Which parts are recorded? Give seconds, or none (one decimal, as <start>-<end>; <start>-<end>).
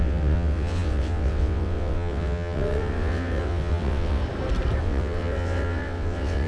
4.2-4.8